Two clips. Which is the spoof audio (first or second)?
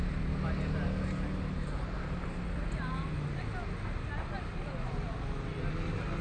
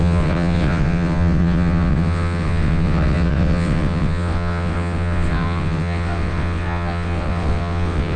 second